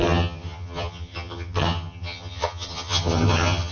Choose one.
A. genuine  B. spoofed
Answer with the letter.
B